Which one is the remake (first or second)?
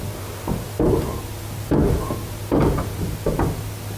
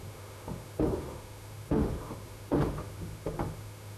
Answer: second